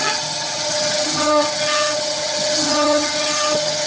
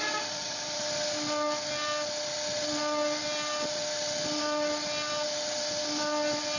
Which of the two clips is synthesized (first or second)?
first